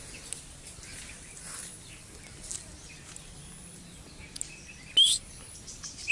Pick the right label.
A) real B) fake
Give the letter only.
A